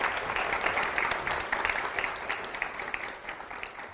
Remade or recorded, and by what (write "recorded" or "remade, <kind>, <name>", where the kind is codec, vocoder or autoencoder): recorded